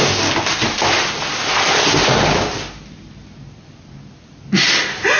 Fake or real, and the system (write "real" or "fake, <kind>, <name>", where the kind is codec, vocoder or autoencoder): real